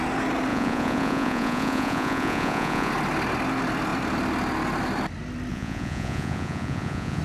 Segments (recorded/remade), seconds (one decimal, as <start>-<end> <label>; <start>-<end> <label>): 0.0-0.5 recorded; 0.5-2.9 remade; 2.9-5.5 recorded; 5.5-7.2 remade